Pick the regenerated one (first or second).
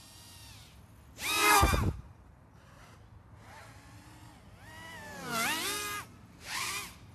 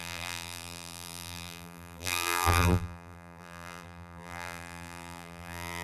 second